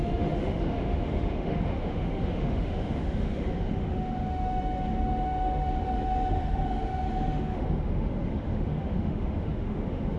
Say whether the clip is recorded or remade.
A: remade